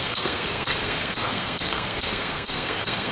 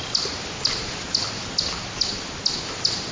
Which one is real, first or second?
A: second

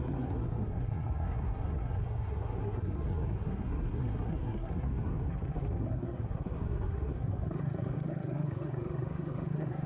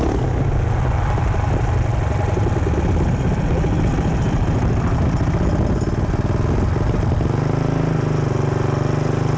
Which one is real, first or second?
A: second